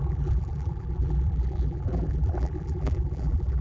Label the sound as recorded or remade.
remade